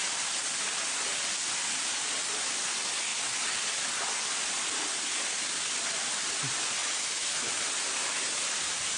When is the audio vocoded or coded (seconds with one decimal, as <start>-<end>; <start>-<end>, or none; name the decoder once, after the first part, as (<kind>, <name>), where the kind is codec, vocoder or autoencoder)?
6.8-7.5 (autoencoder, DAC-VAE)